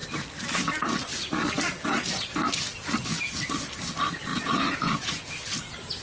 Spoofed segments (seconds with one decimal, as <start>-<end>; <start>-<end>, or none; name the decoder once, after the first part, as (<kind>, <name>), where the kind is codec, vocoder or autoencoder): 4.3-5.3 (vocoder, Vocos)